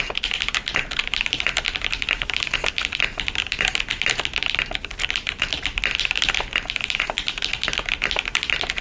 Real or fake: real